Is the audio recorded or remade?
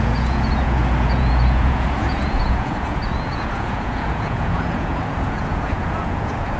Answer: remade